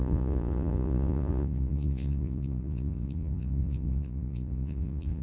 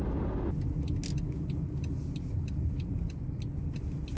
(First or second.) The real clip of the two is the second